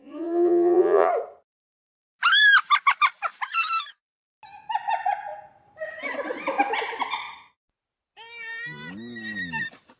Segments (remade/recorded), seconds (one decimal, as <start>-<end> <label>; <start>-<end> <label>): 0.0-1.1 remade; 1.1-10.0 recorded